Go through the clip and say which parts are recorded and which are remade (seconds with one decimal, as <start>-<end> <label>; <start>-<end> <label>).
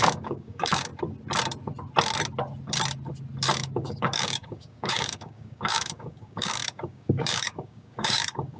0.0-0.9 remade; 0.9-3.5 recorded; 3.5-8.6 remade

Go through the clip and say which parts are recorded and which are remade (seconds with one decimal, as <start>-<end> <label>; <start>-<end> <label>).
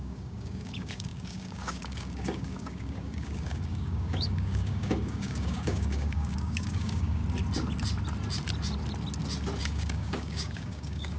0.0-7.2 remade; 7.2-9.6 recorded; 9.6-11.2 remade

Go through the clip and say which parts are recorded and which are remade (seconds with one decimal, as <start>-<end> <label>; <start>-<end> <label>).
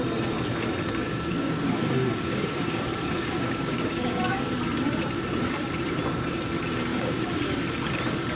0.0-1.0 recorded; 1.0-4.4 remade; 4.4-6.9 recorded; 6.9-7.4 remade; 7.4-8.4 recorded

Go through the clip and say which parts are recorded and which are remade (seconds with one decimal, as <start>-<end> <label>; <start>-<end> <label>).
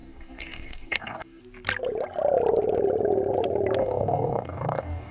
0.0-1.4 remade; 1.4-3.8 recorded; 3.8-5.1 remade